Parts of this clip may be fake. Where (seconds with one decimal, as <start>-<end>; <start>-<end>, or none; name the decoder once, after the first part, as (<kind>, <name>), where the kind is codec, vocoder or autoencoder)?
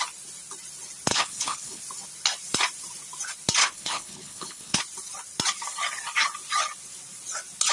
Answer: 1.1-1.8 (codec, HILCodec); 3.6-4.8